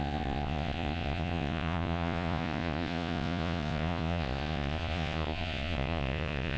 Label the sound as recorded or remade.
remade